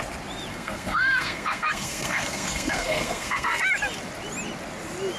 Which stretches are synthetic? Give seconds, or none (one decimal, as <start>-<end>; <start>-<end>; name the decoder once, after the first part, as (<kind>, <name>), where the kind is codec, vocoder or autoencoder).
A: 0.5-3.6 (codec, SNAC)